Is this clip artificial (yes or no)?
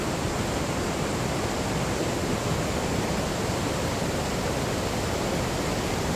yes